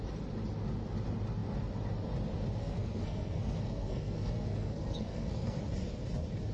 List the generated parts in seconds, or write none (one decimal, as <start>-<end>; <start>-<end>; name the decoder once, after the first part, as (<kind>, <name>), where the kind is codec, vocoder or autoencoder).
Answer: 2.6-5.6 (codec, SNAC)